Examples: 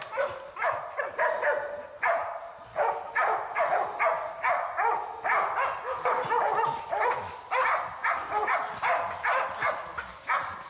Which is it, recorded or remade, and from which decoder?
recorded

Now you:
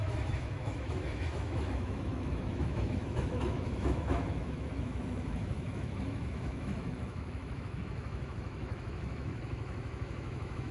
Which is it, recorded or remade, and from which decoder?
remade, autoencoder, DAC-VAE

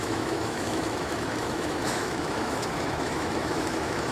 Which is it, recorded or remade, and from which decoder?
remade, autoencoder, DAC-VAE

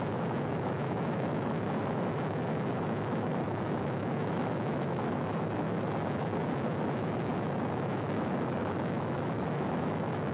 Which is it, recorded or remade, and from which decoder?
remade, autoencoder, DAC-VAE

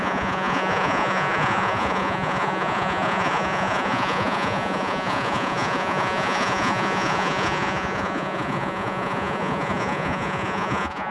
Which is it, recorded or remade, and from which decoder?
remade, vocoder, Vocos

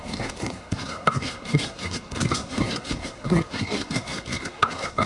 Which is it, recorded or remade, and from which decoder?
remade, codec, SNAC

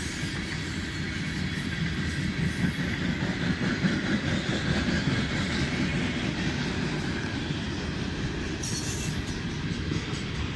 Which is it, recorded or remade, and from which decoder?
recorded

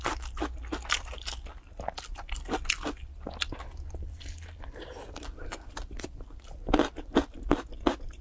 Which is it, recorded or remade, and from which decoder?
recorded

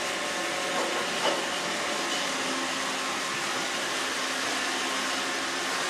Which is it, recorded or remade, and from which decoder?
recorded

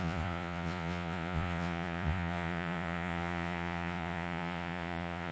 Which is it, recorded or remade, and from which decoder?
remade, vocoder, Vocos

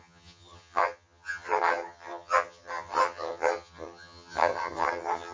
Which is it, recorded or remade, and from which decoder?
remade, vocoder, HiFi-GAN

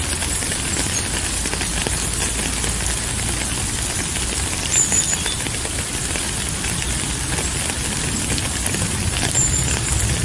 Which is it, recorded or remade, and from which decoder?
remade, vocoder, BigVGAN v2